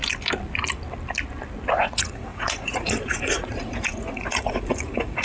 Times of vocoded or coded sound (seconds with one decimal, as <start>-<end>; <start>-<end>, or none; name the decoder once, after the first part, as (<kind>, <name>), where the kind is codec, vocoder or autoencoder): 1.7-5.2 (vocoder, Vocos)